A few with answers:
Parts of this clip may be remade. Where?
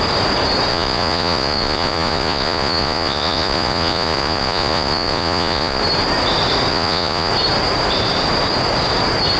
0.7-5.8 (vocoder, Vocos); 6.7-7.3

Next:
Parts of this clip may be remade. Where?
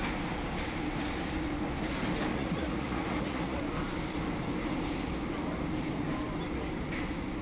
2.3-3.6 (vocoder, Vocos)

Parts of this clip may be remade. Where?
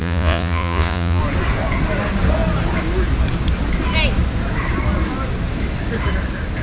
0.0-1.2 (vocoder, Vocos)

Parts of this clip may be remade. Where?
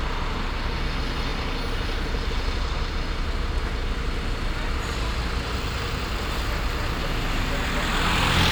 none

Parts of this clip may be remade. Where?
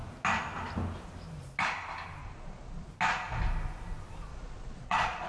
2.2-2.9 (vocoder, Vocos); 4.3-5.3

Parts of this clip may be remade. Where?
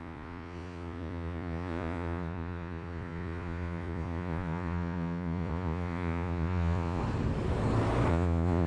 0.0-7.0 (vocoder, Vocos); 8.1-8.7